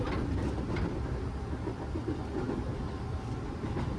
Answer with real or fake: real